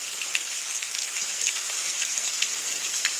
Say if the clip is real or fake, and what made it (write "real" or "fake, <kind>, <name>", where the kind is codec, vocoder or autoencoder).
fake, codec, SNAC